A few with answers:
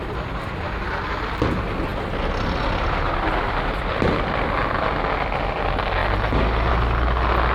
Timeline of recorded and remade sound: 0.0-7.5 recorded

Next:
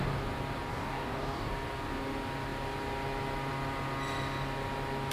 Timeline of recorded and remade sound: 0.0-0.7 recorded; 0.7-1.5 remade; 1.5-5.1 recorded

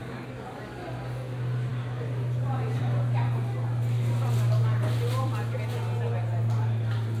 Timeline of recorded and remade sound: 0.0-0.8 remade; 0.8-7.2 recorded

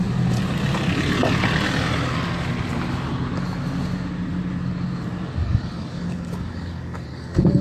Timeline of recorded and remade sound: 0.0-5.4 recorded; 5.4-7.6 remade

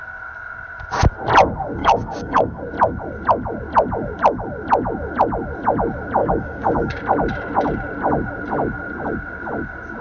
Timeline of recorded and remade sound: 0.0-1.8 recorded; 1.8-2.6 remade; 2.6-6.2 recorded; 6.2-7.0 remade; 7.0-10.0 recorded

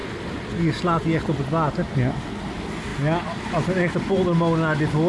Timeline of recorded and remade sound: 0.0-5.1 recorded

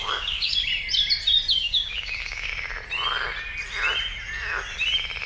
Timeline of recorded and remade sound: 0.0-0.7 remade; 0.7-1.5 recorded; 1.5-2.5 remade; 2.5-5.3 recorded